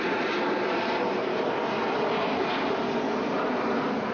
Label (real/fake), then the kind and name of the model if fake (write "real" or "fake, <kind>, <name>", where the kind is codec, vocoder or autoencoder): real